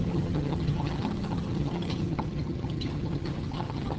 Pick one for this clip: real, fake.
fake